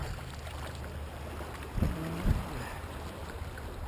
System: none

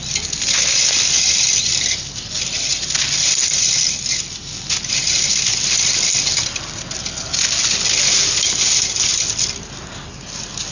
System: none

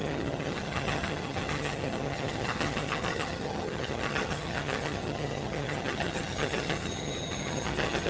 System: vocoder, HiFi-GAN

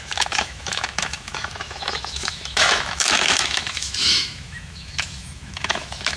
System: autoencoder, DAC-VAE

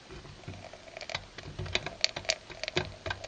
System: none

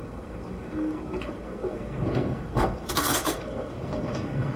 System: codec, SNAC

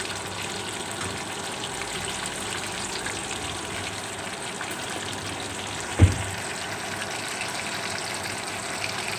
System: none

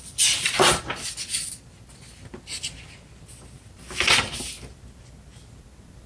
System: none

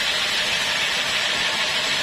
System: none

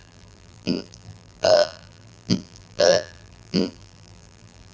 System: vocoder, BigVGAN v2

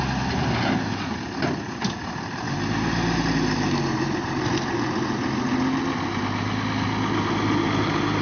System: none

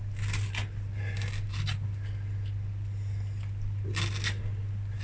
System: none